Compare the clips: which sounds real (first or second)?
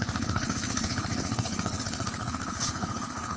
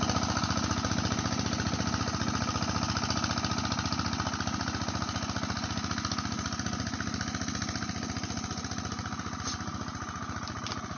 second